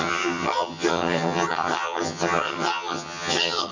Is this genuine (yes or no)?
no